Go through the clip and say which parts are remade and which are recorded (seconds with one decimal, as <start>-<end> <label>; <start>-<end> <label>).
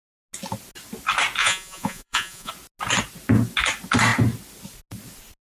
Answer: 0.0-1.4 recorded; 1.4-2.5 remade; 2.5-5.5 recorded